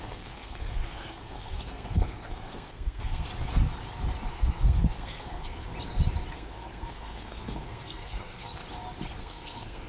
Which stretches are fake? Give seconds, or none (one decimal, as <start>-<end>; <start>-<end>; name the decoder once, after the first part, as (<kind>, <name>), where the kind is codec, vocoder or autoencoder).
0.0-3.3 (codec, SNAC); 4.3-5.7; 6.3-8.6; 9.2-9.9